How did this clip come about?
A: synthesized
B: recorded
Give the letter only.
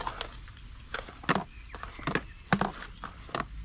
B